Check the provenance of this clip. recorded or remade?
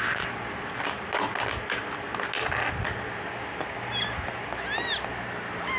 recorded